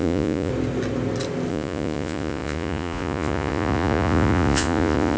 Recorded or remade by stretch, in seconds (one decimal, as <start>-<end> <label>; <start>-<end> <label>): 0.0-0.5 remade; 0.5-1.5 recorded; 1.5-5.2 remade

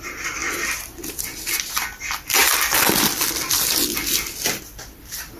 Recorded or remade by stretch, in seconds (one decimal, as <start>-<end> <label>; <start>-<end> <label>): 0.0-5.4 recorded

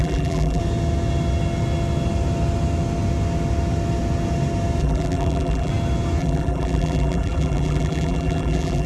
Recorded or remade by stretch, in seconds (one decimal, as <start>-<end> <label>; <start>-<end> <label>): 0.0-0.6 remade; 0.6-4.8 recorded; 4.8-5.7 remade; 5.7-6.2 recorded; 6.2-8.9 remade

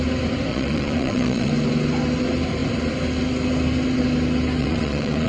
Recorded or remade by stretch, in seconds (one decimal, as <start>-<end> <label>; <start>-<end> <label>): 0.0-0.5 recorded; 0.5-1.5 remade; 1.5-4.6 recorded; 4.6-5.3 remade

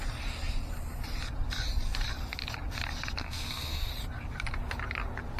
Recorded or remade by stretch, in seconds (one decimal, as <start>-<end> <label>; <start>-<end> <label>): 0.0-3.2 recorded; 3.2-3.9 remade; 3.9-5.4 recorded